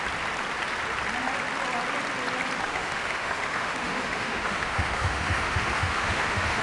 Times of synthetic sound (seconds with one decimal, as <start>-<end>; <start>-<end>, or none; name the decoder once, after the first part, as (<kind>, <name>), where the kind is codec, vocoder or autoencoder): 2.6-6.6 (autoencoder, DAC-VAE)